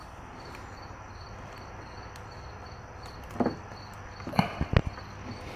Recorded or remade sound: recorded